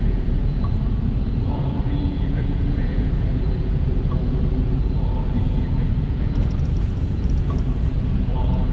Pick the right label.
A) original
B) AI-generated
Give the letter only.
B